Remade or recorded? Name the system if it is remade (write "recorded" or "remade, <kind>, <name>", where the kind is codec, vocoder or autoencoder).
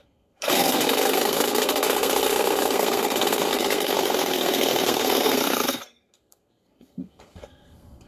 remade, codec, SNAC